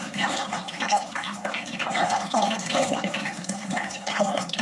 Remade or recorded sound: remade